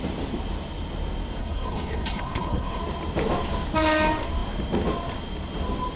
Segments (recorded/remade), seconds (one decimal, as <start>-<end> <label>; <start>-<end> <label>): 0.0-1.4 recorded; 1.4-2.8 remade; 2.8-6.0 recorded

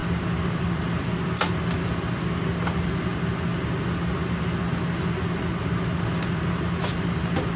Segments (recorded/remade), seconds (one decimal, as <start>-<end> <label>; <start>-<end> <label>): 0.0-7.6 recorded

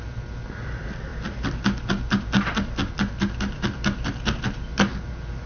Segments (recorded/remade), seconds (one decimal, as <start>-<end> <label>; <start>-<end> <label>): 0.0-5.5 recorded